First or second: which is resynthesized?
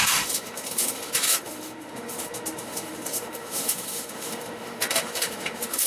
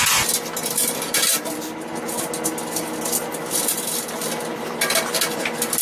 first